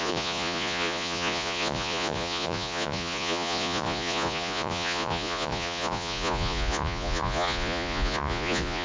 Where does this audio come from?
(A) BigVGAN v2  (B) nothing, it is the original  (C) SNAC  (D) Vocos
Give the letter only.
D